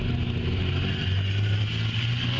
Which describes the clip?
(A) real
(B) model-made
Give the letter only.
A